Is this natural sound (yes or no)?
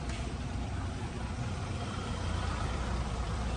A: no